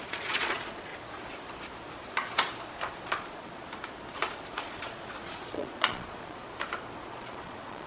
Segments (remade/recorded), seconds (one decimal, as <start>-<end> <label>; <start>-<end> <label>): 0.0-0.9 remade; 0.9-3.1 recorded; 3.1-3.6 remade; 3.6-4.5 recorded; 4.5-6.4 remade; 6.4-7.1 recorded; 7.1-7.9 remade